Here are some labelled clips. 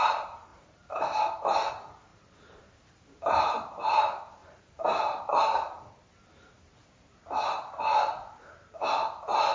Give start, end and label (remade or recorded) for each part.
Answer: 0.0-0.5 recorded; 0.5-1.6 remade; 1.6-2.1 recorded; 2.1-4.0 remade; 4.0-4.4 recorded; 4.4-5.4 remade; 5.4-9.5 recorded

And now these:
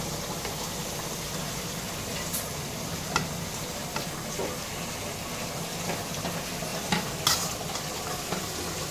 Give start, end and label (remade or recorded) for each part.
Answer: 0.0-8.9 recorded